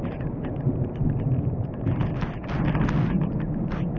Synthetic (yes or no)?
no